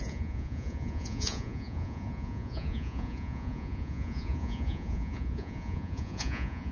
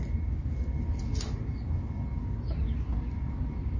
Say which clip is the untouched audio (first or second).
second